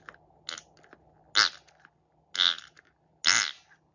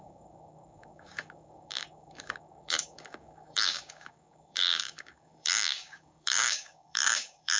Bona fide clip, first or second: first